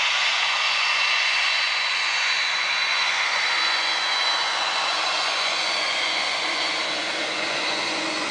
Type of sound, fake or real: fake